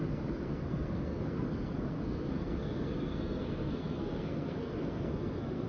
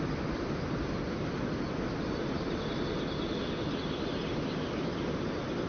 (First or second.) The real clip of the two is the second